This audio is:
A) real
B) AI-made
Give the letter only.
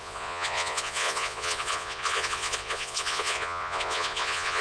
B